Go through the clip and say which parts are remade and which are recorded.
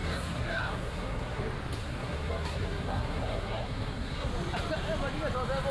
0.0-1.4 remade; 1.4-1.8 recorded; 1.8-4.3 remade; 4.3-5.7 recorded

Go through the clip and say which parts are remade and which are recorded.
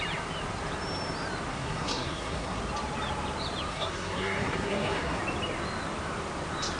0.0-1.5 recorded; 1.5-2.6 remade; 2.6-3.7 recorded; 3.7-5.2 remade; 5.2-6.8 recorded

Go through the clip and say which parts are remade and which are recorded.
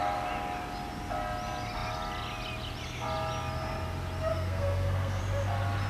0.0-4.3 recorded; 4.3-5.2 remade; 5.2-5.9 recorded